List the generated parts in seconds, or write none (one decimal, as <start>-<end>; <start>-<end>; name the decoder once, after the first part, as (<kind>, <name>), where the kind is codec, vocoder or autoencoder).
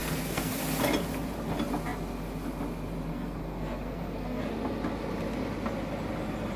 0.0-0.6 (codec, SNAC); 3.1-4.4